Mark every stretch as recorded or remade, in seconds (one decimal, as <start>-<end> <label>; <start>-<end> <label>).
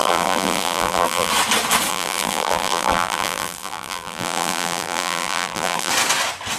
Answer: 0.0-1.3 remade; 1.3-1.9 recorded; 1.9-5.9 remade; 5.9-6.6 recorded